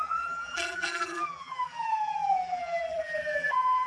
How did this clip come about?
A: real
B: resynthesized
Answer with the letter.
B